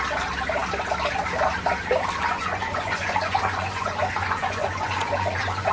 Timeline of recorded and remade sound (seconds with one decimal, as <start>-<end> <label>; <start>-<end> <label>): 0.0-2.3 recorded; 2.3-5.7 remade